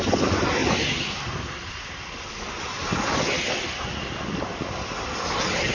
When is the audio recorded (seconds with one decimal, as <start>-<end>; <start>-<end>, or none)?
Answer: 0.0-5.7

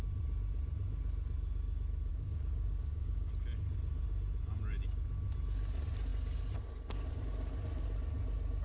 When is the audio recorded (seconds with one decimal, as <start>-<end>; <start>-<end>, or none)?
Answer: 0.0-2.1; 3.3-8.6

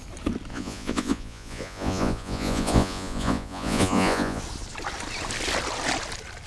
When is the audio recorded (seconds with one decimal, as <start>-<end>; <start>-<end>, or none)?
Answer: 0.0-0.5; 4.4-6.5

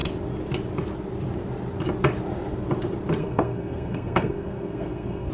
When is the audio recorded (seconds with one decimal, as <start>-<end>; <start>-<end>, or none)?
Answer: 0.0-3.2

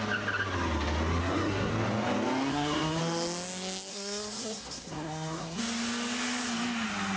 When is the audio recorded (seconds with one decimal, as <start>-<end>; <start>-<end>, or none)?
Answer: 0.0-1.2; 1.7-2.5; 3.0-3.9; 5.6-7.2

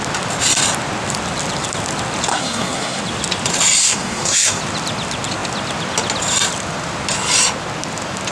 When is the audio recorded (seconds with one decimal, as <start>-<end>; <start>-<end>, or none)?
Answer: 0.0-2.3; 3.0-3.8; 4.6-8.3

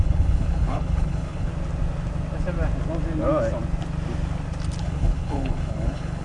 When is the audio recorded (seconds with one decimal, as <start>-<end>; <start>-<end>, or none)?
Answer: 1.5-4.8